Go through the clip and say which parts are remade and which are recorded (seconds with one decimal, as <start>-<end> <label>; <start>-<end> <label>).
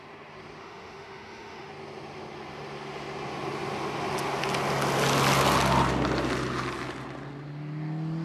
0.0-0.6 recorded; 0.6-1.7 remade; 1.7-8.2 recorded